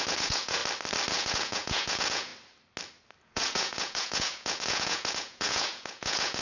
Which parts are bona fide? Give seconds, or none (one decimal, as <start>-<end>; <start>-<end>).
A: 0.6-1.1; 2.3-3.2